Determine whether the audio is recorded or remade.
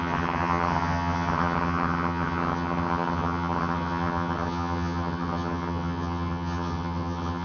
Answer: remade